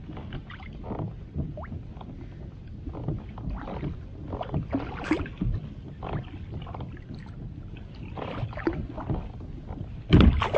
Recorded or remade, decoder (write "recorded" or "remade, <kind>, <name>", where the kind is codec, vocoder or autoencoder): recorded